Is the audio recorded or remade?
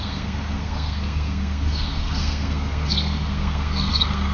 remade